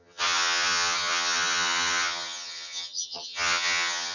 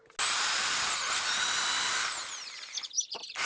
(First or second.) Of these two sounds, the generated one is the first